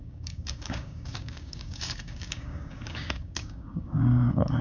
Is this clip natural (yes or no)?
no